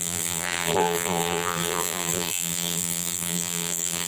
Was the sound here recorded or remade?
remade